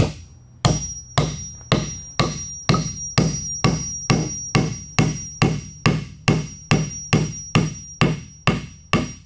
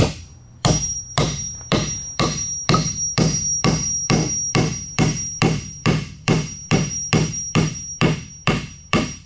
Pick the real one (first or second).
first